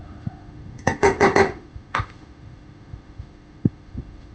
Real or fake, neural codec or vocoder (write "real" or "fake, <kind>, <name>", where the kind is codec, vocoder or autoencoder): fake, autoencoder, DAC-VAE